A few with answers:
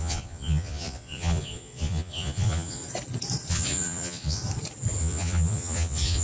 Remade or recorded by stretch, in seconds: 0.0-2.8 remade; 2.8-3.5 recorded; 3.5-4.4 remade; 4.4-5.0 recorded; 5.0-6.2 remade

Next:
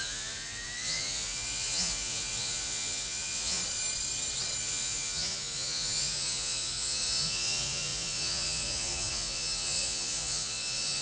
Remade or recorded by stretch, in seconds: 0.0-3.6 remade; 3.6-4.6 recorded; 4.6-11.0 remade

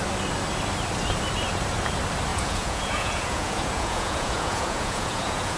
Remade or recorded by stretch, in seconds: 0.0-2.3 recorded; 2.3-5.6 remade

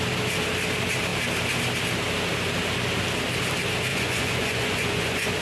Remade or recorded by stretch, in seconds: 0.0-3.9 recorded; 3.9-5.4 remade

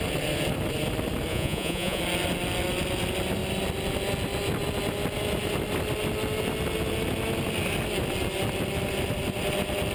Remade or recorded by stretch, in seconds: 0.0-1.3 recorded; 1.3-2.0 remade; 2.0-9.9 recorded

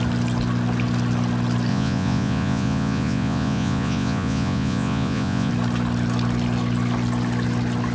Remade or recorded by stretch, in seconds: 0.0-1.7 recorded; 1.7-5.5 remade; 5.5-7.9 recorded

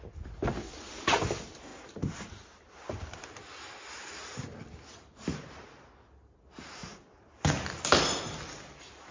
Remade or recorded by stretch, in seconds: 0.0-9.1 recorded

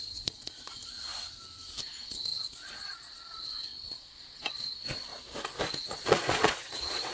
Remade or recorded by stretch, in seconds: 0.0-1.1 remade; 1.1-1.8 recorded; 1.8-5.1 remade; 5.1-5.8 recorded; 5.8-7.1 remade